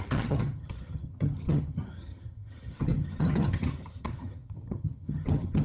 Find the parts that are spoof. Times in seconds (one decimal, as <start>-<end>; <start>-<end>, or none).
0.0-5.6